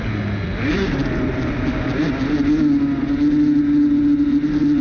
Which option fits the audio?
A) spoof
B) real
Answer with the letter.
B